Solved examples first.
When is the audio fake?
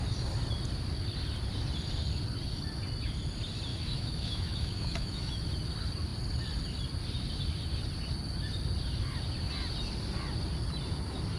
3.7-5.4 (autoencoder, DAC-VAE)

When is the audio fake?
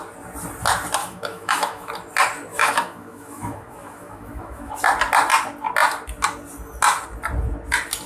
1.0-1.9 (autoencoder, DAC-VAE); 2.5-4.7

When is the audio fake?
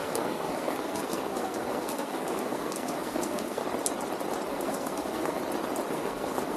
0.0-3.6 (codec, SNAC); 4.5-5.4; 5.9-6.6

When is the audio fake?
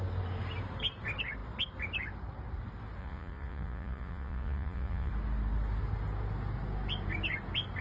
3.0-5.1 (vocoder, Vocos)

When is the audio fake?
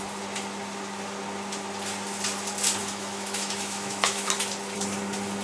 2.8-4.3 (autoencoder, DAC-VAE)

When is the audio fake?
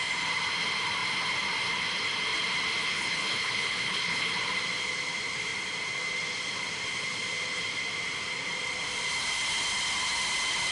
2.8-4.3 (codec, HILCodec)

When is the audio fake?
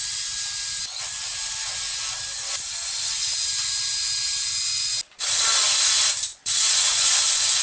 6.3-7.6 (vocoder, Vocos)